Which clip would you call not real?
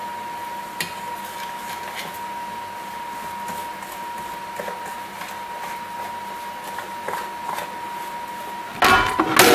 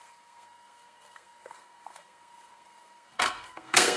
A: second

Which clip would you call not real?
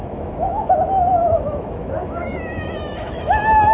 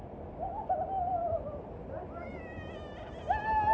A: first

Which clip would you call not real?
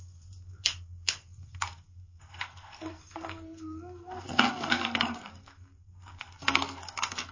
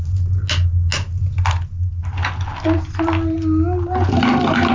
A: first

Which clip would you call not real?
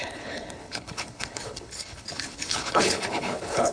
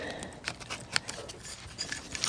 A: first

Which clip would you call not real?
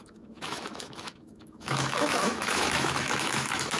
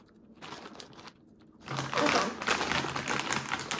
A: first